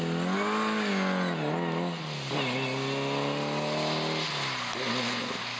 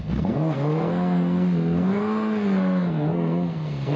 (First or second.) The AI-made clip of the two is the second